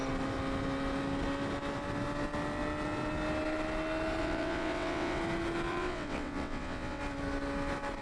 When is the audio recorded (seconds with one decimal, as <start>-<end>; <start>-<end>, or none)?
0.0-4.2; 5.2-5.7; 7.0-8.0